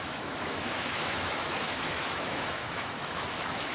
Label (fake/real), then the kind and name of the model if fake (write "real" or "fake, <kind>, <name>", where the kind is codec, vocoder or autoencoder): fake, autoencoder, DAC-VAE